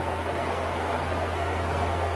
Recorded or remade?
remade